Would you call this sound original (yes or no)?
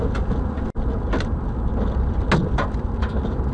yes